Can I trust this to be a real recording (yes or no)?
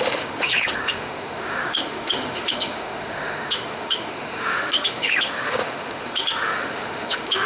no